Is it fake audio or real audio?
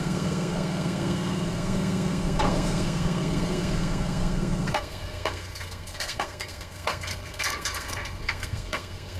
fake